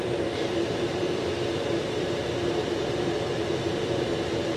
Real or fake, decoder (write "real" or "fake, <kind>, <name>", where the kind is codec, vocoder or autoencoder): fake, vocoder, BigVGAN v2